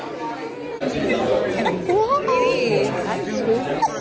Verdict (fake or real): real